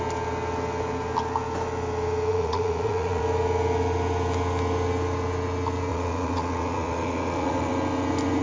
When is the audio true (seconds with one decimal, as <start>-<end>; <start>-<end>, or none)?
0.0-2.3; 3.2-5.9; 7.7-8.4